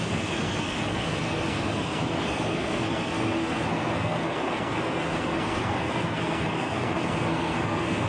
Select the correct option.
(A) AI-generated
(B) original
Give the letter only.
A